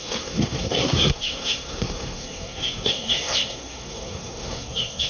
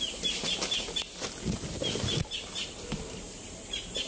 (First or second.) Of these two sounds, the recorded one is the second